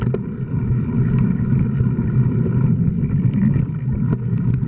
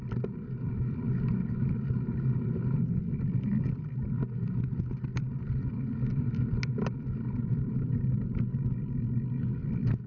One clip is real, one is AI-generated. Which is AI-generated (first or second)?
first